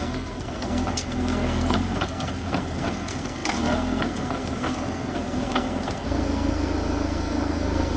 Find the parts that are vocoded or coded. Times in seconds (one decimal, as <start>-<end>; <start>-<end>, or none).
0.0-8.0